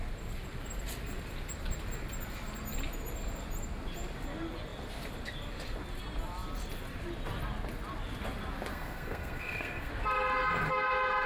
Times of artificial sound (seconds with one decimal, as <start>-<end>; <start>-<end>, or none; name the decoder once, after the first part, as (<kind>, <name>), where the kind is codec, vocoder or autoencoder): 8.7-9.9 (codec, SNAC)